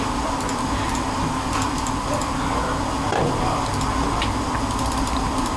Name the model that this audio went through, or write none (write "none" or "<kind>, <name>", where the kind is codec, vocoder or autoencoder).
none